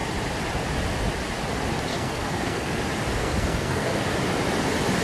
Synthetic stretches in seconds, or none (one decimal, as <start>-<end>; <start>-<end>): 1.9-2.8; 3.2-4.0